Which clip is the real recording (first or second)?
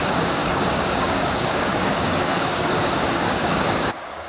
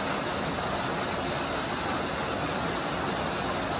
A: second